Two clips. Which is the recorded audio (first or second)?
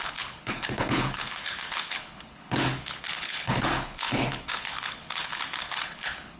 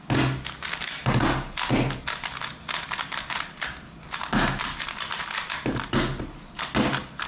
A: second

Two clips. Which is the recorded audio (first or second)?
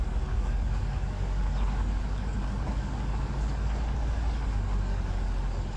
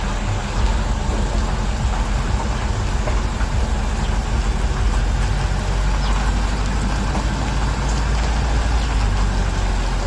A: second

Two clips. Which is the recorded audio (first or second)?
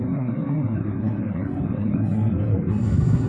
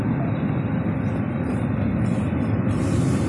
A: second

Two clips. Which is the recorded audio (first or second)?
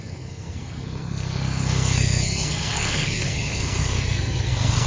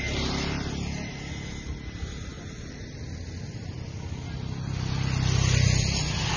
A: second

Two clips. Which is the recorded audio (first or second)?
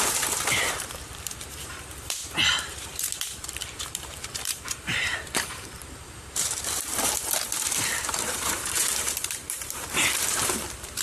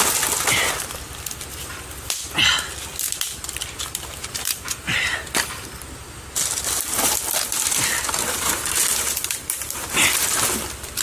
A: second